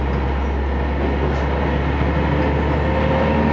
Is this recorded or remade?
recorded